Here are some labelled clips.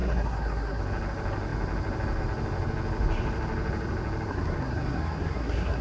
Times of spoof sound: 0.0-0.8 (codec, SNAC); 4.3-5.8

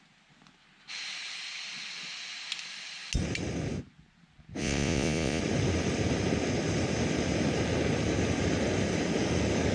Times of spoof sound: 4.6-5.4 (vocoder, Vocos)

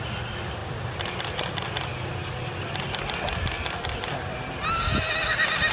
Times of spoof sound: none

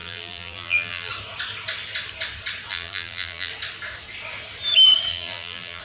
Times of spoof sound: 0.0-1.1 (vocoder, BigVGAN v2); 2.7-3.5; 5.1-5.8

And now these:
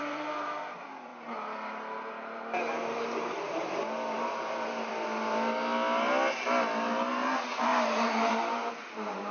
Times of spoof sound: 0.0-1.1 (vocoder, BigVGAN v2); 2.1-4.9; 7.1-9.3

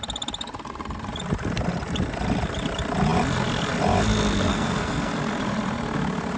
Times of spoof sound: 4.5-5.1 (codec, SNAC)

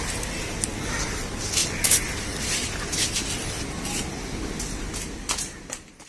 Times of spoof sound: none

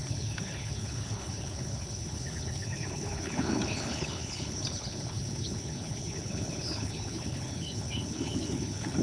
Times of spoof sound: 0.0-9.0 (codec, HILCodec)